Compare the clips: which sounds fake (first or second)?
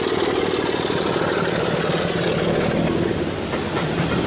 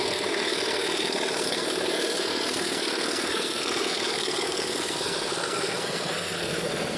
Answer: second